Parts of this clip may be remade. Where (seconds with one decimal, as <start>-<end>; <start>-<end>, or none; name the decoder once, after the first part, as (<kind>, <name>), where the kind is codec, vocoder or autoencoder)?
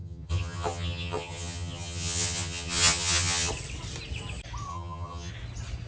0.0-3.5 (vocoder, HiFi-GAN); 4.7-5.3